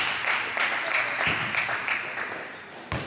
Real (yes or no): yes